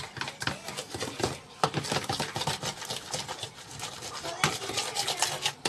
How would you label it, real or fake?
real